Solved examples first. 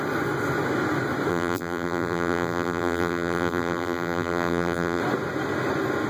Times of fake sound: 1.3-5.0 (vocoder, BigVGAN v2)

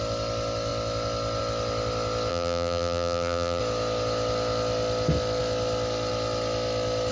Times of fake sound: 2.3-3.6 (vocoder, BigVGAN v2)

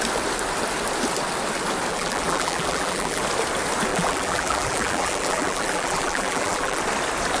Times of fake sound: 1.9-3.2 (vocoder, BigVGAN v2); 3.9-6.8

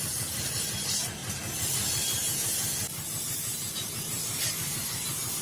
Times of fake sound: 3.5-4.5 (vocoder, BigVGAN v2)

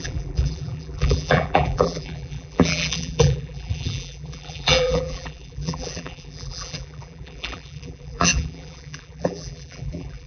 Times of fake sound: 0.0-10.3 (vocoder, BigVGAN v2)